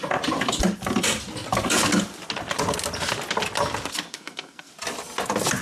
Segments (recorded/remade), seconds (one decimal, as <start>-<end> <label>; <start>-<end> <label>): 0.0-4.1 recorded; 4.1-4.7 remade; 4.7-5.6 recorded